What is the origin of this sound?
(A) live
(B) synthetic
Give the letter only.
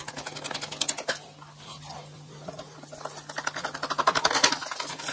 A